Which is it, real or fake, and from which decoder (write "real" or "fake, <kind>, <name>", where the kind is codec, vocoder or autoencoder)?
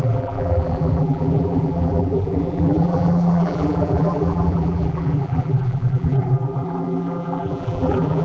fake, vocoder, BigVGAN v2